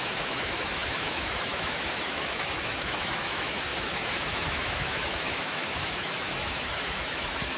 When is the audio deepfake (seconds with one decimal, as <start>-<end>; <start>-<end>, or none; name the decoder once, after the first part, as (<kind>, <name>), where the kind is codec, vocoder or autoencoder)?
0.0-7.6 (autoencoder, DAC-VAE)